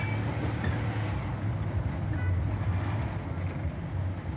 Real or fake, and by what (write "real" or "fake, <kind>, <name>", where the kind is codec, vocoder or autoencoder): real